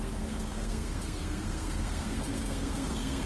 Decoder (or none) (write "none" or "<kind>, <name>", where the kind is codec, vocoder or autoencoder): codec, SNAC